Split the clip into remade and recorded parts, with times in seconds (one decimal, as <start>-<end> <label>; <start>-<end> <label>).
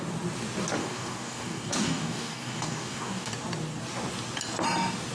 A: 0.0-0.8 recorded; 0.8-3.3 remade; 3.3-5.1 recorded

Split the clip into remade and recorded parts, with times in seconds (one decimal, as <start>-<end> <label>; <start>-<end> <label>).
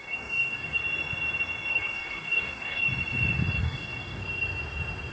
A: 0.0-0.8 remade; 0.8-1.7 recorded; 1.7-2.9 remade; 2.9-3.6 recorded; 3.6-4.2 remade; 4.2-5.1 recorded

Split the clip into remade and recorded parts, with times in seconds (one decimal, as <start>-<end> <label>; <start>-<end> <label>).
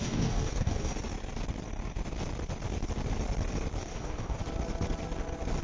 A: 0.0-0.9 remade; 0.9-3.8 recorded; 3.8-4.4 remade; 4.4-5.6 recorded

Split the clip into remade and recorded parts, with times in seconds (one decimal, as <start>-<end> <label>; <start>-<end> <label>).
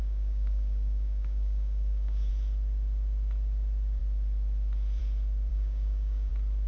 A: 0.0-2.3 remade; 2.3-5.5 recorded; 5.5-6.3 remade; 6.3-6.7 recorded